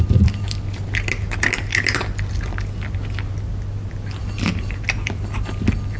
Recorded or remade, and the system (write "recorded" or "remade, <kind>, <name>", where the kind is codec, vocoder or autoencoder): recorded